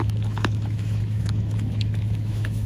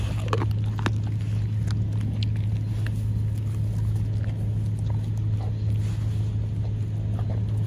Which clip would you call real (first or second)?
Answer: second